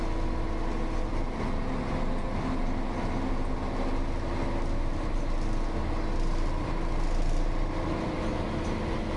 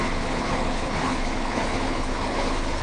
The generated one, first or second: second